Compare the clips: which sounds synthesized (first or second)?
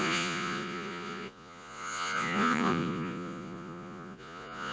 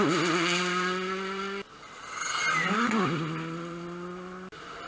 first